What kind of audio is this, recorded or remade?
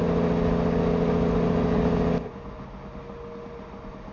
recorded